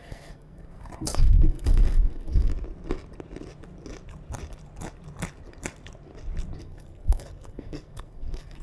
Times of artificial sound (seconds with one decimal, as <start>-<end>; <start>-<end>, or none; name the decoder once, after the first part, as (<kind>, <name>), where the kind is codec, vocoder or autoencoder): 0.0-2.5 (codec, SNAC); 6.6-8.6